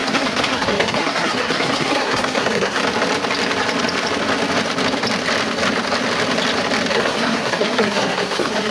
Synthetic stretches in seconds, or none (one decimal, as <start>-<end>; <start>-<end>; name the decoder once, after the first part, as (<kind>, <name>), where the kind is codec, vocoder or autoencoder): 0.0-2.8 (codec, SNAC); 6.9-8.7